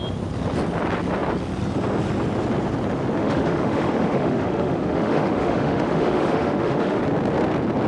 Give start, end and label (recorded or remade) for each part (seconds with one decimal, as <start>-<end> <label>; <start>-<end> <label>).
0.0-3.2 recorded; 3.2-7.0 remade; 7.0-7.9 recorded